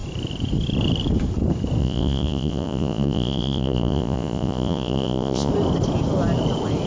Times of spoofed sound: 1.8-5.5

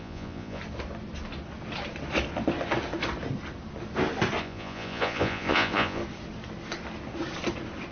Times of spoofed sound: 0.0-0.6; 4.4-6.0

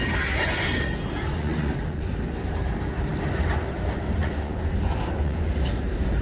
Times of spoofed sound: 1.3-2.1; 4.2-5.5

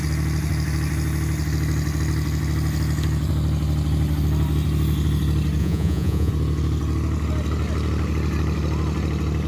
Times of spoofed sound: 5.6-6.3